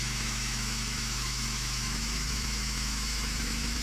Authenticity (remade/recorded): remade